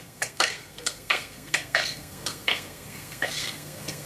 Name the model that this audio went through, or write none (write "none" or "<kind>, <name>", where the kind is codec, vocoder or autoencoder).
codec, SNAC